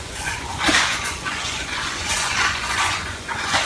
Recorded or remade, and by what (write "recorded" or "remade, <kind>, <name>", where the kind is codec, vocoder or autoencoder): remade, vocoder, Vocos